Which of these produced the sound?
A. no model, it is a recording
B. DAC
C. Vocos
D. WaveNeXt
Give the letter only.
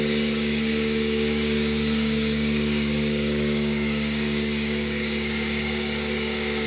B